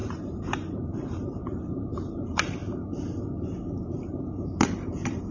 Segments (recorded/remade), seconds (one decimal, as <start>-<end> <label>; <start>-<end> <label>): 0.0-2.6 remade; 2.6-3.9 recorded; 3.9-5.3 remade